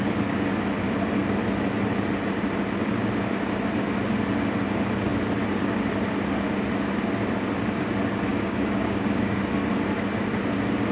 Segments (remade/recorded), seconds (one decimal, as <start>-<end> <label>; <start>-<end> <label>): 0.0-8.3 recorded; 8.3-9.4 remade; 9.4-10.9 recorded